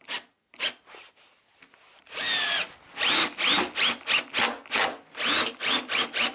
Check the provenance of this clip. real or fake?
real